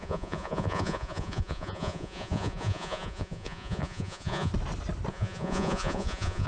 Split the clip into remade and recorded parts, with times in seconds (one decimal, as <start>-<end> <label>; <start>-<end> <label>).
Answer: 0.0-4.5 remade; 4.5-5.1 recorded; 5.1-6.5 remade